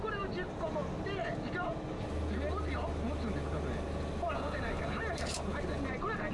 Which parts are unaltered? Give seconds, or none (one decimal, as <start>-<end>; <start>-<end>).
0.0-6.3